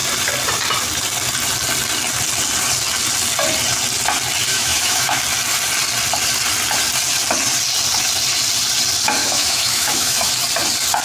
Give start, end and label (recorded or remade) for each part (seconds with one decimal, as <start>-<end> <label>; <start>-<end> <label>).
0.0-4.5 recorded; 4.5-5.2 remade; 5.2-9.2 recorded; 9.2-10.3 remade; 10.3-11.0 recorded